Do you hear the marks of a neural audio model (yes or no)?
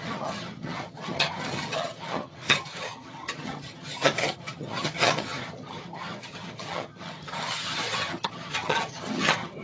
yes